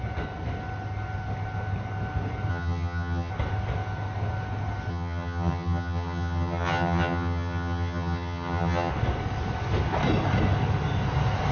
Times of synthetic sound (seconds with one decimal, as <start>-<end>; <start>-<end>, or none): 2.5-3.3; 4.9-8.9